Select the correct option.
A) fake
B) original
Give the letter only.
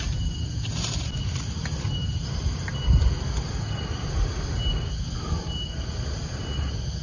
B